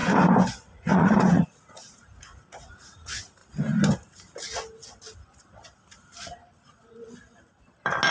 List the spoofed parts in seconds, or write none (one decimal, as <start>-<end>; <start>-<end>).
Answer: 0.7-3.4